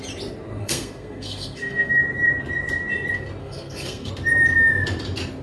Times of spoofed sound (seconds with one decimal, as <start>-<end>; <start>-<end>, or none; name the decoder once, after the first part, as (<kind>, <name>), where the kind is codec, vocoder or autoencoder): 0.6-1.9 (codec, SNAC); 3.4-4.1